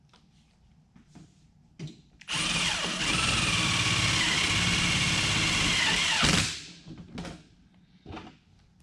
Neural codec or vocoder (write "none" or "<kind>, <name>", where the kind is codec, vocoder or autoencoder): none